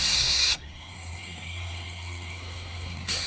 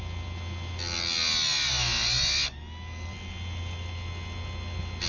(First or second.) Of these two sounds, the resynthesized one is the first